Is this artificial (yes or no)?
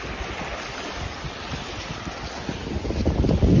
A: no